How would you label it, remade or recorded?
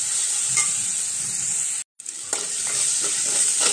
recorded